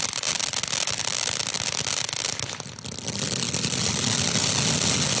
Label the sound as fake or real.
real